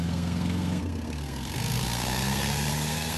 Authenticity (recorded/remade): remade